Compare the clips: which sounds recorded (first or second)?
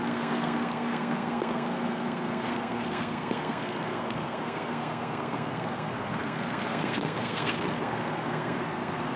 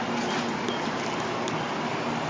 second